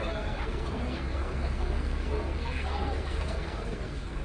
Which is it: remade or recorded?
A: remade